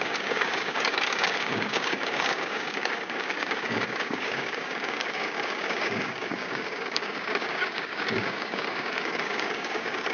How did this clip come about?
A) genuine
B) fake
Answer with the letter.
B